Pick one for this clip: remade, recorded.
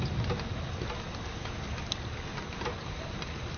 recorded